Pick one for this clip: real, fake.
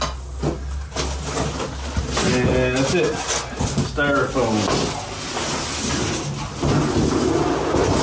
real